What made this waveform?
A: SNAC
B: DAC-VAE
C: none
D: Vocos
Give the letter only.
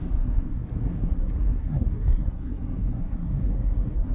A